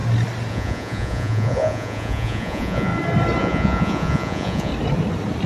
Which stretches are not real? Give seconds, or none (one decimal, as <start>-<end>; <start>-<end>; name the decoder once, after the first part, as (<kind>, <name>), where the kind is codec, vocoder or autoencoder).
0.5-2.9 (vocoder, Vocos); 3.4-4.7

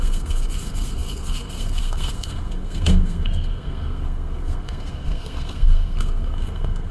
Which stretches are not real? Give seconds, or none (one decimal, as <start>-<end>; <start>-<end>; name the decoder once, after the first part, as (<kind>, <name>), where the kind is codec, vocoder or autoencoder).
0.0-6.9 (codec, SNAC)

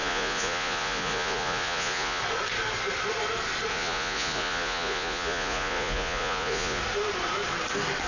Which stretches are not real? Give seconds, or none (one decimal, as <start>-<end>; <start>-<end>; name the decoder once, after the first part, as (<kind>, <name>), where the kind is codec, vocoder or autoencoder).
0.0-2.2 (vocoder, Vocos); 3.7-6.8

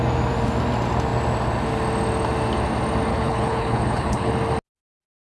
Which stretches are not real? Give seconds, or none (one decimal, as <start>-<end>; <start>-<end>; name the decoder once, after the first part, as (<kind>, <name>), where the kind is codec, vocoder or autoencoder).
3.1-4.3 (codec, HILCodec)

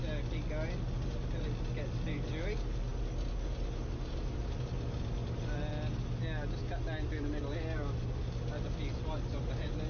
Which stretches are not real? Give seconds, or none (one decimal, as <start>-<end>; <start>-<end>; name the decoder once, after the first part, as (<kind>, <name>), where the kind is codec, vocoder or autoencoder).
none

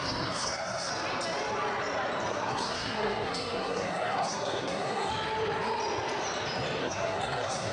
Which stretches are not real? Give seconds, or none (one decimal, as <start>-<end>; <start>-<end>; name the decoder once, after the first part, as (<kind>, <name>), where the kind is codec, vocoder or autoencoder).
0.0-0.9 (codec, SNAC); 2.3-5.1; 6.8-7.7

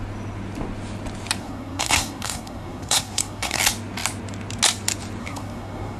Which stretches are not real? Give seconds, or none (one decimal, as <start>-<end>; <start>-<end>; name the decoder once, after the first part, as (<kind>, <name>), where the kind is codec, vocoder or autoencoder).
1.4-3.6 (codec, SNAC); 5.2-6.0